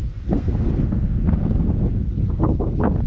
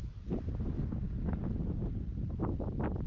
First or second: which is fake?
first